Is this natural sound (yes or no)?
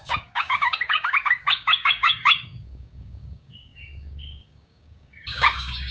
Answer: no